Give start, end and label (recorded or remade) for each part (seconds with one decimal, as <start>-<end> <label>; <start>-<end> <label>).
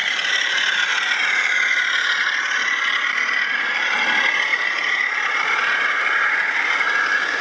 0.0-0.9 remade; 0.9-4.5 recorded; 4.5-5.1 remade; 5.1-7.4 recorded